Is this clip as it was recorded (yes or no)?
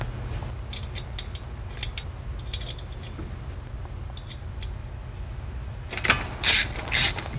yes